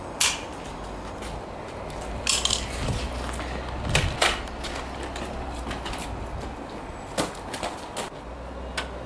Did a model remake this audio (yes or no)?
no